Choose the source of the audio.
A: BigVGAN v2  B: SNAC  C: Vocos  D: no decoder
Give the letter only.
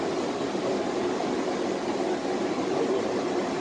D